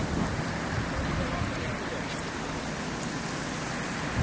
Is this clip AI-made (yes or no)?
no